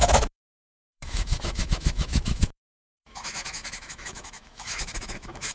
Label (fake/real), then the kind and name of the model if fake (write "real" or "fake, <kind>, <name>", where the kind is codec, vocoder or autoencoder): fake, autoencoder, DAC-VAE